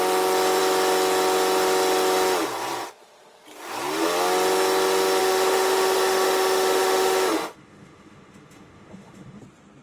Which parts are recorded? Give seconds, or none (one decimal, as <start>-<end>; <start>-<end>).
0.0-5.2; 9.4-9.8